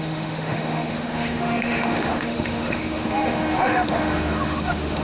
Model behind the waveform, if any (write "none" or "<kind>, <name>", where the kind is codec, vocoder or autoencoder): autoencoder, DAC-VAE